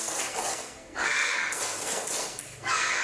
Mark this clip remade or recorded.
remade